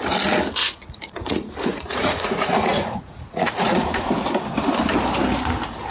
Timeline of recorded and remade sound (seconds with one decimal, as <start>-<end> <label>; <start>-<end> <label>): 0.0-0.6 recorded; 0.6-4.1 remade; 4.1-5.9 recorded

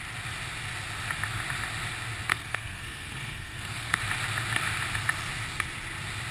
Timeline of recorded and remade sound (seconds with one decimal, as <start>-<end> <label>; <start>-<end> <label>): 0.0-2.3 recorded; 2.3-4.0 remade; 4.0-6.3 recorded

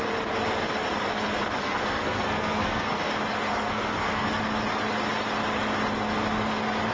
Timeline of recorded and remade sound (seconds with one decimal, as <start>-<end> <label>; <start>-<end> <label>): 0.0-1.6 recorded; 1.6-3.1 remade; 3.1-3.5 recorded; 3.5-4.4 remade; 4.4-6.9 recorded

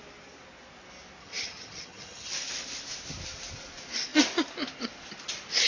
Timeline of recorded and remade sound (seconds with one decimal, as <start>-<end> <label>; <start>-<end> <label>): 0.0-1.2 recorded; 1.2-2.3 remade; 2.3-5.7 recorded